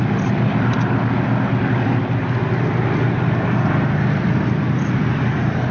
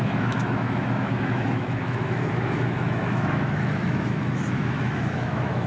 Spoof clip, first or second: second